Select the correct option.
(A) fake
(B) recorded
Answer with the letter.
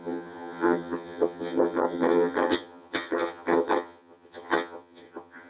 A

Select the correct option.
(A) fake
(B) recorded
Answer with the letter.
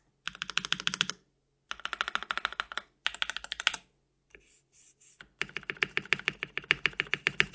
B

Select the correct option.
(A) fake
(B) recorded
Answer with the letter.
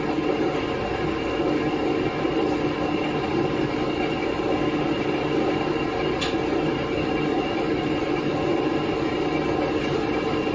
B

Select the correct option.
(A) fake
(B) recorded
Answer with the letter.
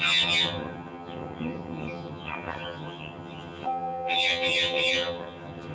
A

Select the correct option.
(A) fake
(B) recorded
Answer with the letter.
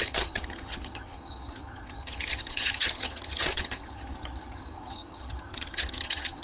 A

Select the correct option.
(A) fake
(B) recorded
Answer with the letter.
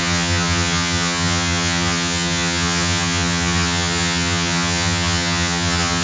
A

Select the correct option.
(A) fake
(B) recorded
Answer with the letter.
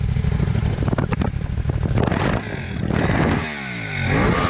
B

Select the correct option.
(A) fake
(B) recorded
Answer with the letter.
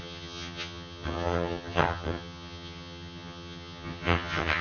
A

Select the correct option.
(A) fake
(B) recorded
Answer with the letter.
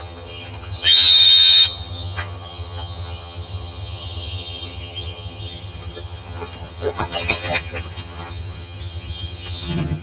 A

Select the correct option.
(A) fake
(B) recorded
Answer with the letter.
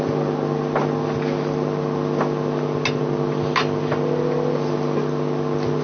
B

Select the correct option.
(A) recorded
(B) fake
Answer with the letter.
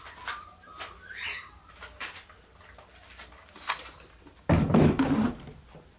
A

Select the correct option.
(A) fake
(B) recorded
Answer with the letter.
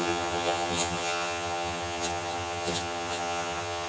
A